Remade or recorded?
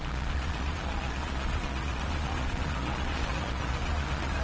remade